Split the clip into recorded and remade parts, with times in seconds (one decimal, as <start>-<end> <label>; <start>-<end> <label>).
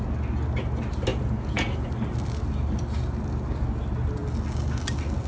0.0-1.1 recorded; 1.1-1.9 remade; 1.9-5.3 recorded